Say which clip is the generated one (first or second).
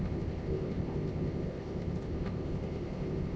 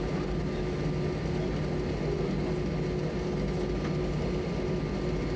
first